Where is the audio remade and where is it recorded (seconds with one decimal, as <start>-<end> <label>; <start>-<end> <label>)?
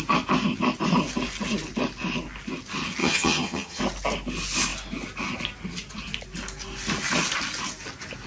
0.0-3.0 recorded; 3.0-3.8 remade; 3.8-8.3 recorded